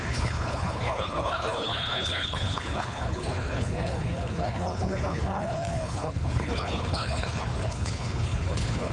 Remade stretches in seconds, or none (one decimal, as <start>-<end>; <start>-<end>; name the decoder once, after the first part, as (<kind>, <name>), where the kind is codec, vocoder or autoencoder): 0.0-8.9 (codec, HILCodec)

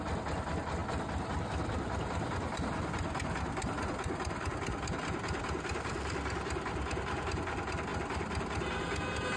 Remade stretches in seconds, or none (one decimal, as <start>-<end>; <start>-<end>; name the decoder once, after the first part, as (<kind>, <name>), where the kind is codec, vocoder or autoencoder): none

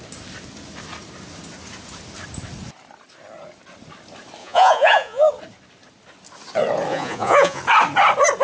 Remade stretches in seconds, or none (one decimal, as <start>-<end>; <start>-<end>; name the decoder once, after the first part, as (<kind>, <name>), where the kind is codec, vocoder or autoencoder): 4.4-5.3 (vocoder, Vocos); 6.9-7.6

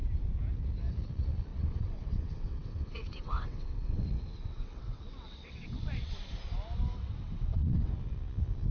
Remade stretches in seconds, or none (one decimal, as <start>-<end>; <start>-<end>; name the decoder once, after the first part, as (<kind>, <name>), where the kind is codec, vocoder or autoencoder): 1.5-6.1 (vocoder, WaveNeXt); 7.0-7.9

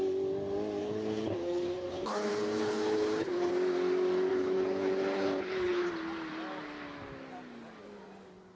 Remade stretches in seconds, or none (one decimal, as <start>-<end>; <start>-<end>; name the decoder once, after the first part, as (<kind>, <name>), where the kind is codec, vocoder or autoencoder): 0.8-3.5 (codec, HILCodec); 4.3-5.9

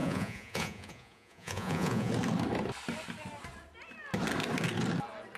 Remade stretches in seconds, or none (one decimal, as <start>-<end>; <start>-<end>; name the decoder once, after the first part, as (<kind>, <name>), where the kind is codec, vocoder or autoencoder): 0.0-2.1 (vocoder, Vocos)

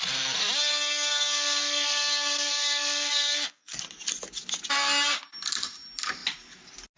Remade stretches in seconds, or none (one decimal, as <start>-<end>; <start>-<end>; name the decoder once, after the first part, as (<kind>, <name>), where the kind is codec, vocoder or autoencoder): 0.7-3.8 (codec, SNAC)